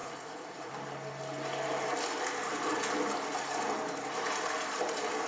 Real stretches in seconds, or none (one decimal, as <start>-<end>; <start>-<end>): 0.7-5.3